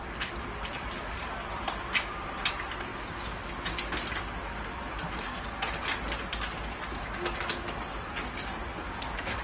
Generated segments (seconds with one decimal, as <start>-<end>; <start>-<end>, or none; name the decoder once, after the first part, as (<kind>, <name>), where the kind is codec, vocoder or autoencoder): 0.0-2.9 (vocoder, BigVGAN v2); 8.1-9.4